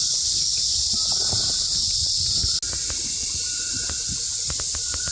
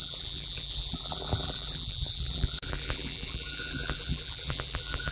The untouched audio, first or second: first